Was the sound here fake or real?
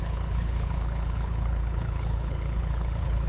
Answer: fake